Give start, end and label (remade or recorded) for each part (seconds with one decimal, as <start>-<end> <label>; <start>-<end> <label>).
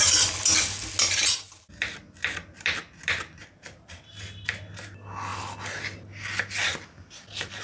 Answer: 0.0-7.6 recorded